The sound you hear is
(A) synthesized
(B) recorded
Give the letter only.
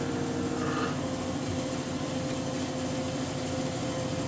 B